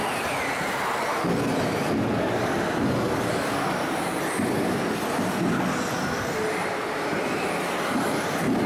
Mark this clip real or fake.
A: real